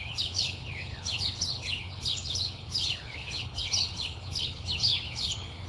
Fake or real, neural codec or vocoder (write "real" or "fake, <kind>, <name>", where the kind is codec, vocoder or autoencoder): fake, codec, HILCodec